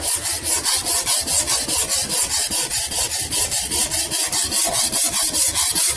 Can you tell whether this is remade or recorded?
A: recorded